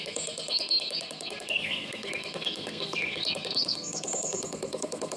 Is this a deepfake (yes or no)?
yes